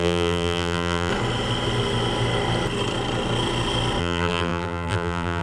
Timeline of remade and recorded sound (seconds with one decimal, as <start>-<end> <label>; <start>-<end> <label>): 0.0-1.1 remade; 1.1-4.0 recorded; 4.0-5.4 remade